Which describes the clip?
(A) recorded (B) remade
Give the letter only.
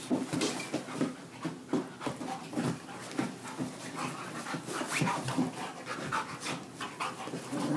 A